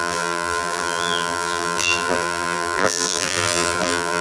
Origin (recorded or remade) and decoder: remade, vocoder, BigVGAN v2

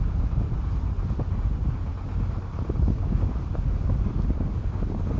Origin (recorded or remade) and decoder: recorded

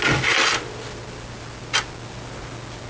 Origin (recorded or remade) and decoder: recorded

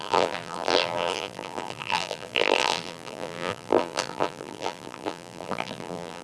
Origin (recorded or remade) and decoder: remade, vocoder, BigVGAN v2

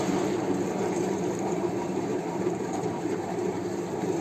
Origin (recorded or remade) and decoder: remade, vocoder, BigVGAN v2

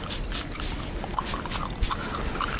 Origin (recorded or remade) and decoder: recorded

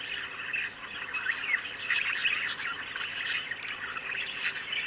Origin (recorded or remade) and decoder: recorded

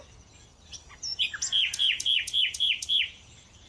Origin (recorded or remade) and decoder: remade, vocoder, Vocos